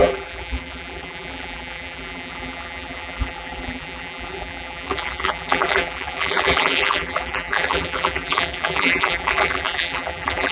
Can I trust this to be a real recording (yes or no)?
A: no